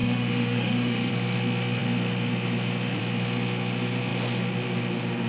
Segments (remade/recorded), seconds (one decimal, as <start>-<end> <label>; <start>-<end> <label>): 0.0-1.1 remade; 1.1-5.3 recorded